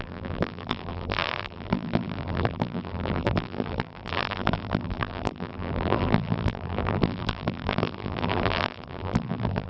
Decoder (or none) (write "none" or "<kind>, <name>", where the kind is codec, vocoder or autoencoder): vocoder, BigVGAN v2